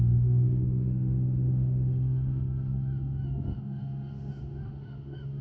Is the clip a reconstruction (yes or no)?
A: yes